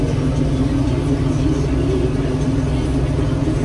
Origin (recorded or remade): recorded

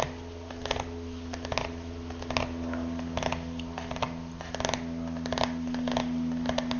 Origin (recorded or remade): recorded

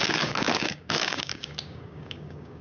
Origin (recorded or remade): remade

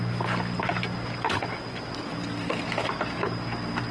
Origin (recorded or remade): recorded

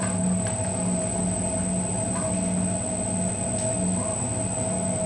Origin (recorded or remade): recorded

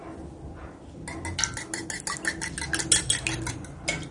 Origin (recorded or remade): recorded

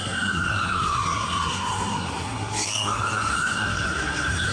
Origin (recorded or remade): remade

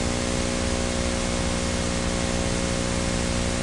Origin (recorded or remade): recorded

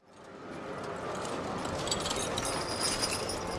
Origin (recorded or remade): recorded